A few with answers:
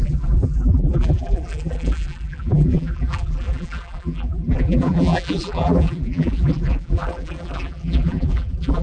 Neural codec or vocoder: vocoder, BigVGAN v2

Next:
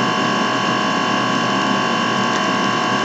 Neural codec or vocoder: none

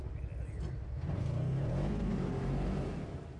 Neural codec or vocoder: none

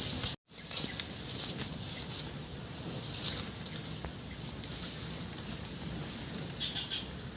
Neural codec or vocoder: none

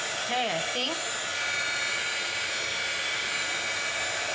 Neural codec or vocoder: none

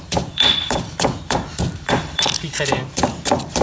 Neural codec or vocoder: vocoder, BigVGAN v2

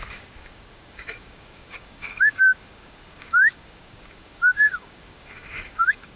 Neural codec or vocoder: codec, DAC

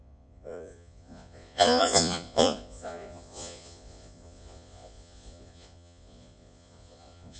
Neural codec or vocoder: vocoder, Vocos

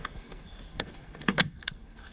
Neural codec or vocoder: codec, SNAC